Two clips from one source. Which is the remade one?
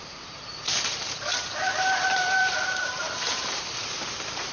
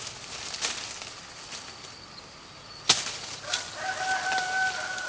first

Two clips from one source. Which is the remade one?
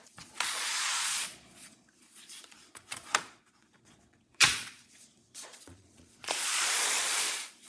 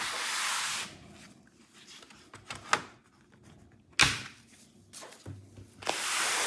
first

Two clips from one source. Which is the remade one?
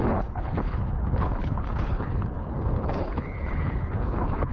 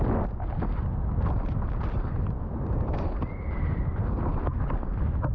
first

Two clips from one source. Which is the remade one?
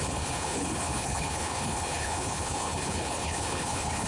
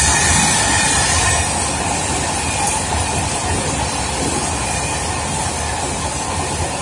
first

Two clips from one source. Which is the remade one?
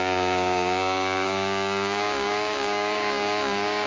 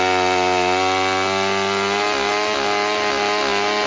first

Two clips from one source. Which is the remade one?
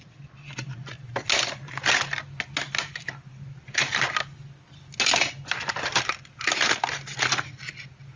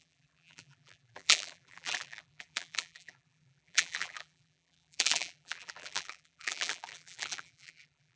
second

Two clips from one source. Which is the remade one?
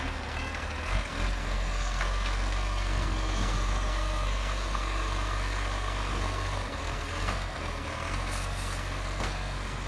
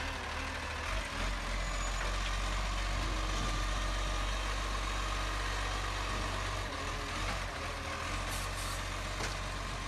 first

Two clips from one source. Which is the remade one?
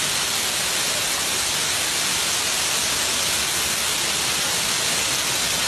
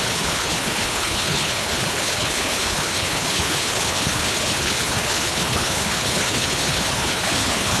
second